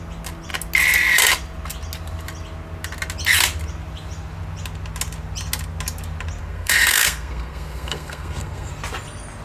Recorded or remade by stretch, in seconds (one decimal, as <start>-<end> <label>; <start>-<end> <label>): 0.0-6.4 recorded; 6.4-8.7 remade; 8.7-9.4 recorded